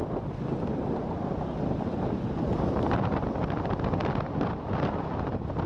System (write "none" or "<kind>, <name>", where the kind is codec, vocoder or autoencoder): vocoder, BigVGAN v2